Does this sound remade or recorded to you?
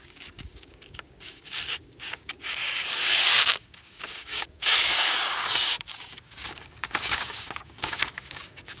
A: remade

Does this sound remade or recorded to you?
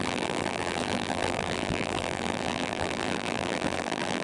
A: remade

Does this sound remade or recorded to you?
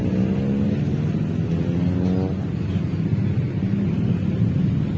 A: recorded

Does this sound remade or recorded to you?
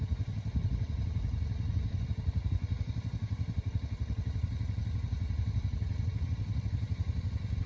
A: recorded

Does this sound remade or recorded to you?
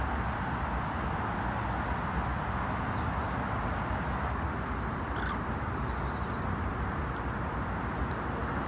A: recorded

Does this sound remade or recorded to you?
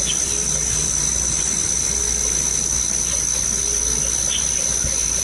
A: recorded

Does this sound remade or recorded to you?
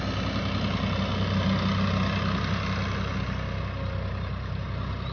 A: recorded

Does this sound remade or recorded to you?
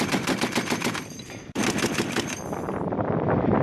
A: remade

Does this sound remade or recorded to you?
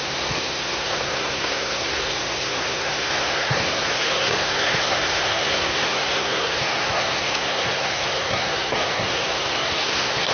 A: remade